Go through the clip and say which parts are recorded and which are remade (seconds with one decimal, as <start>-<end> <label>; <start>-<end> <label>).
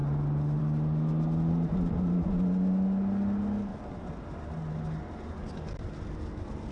0.0-6.7 recorded